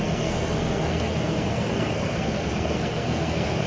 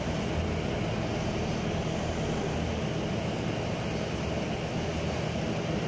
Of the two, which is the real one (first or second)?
second